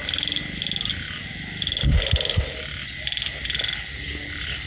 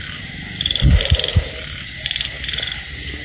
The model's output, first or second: second